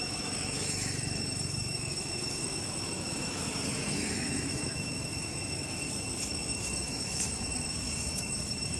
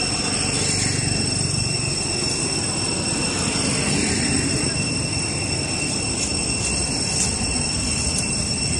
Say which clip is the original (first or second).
second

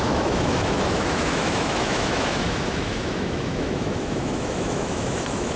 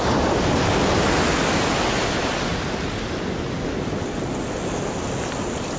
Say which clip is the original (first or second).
second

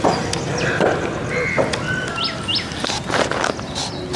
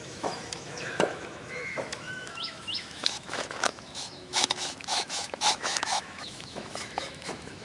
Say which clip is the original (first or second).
first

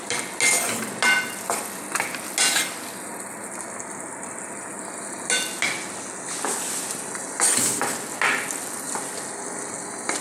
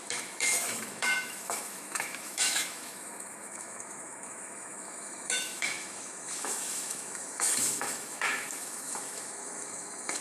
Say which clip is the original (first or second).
first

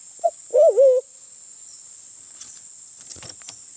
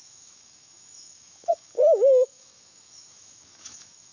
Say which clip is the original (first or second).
first